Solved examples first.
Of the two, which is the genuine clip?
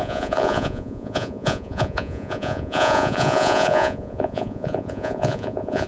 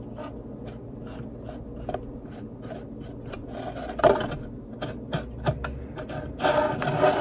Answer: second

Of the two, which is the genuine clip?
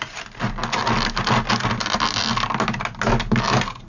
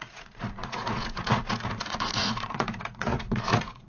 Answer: first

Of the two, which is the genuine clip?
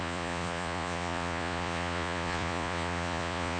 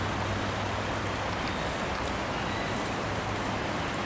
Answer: second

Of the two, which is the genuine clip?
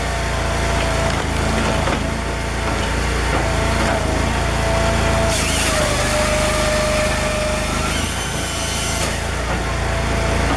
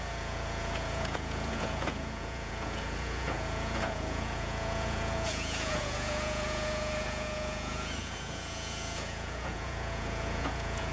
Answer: first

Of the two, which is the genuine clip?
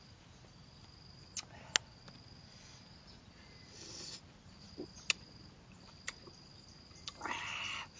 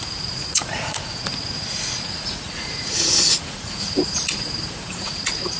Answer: first